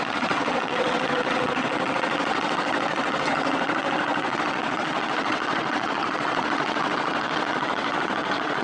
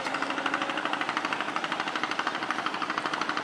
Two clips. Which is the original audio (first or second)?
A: second